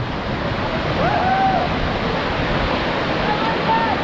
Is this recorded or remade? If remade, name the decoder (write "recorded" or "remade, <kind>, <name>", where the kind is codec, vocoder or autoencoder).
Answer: recorded